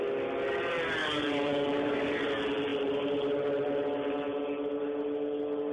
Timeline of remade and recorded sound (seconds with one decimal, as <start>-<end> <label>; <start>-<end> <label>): 0.0-1.0 recorded; 1.0-2.3 remade; 2.3-2.7 recorded; 2.7-3.8 remade; 3.8-5.7 recorded